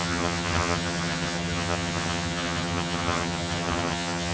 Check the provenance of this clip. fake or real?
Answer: fake